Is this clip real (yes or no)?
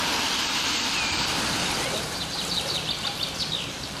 yes